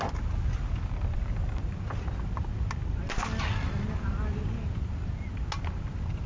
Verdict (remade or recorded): recorded